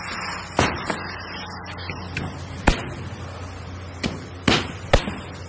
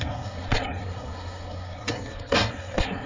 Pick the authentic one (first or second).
first